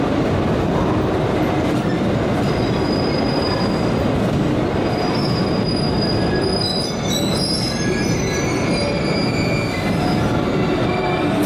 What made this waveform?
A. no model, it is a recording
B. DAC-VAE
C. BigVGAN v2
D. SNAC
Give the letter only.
A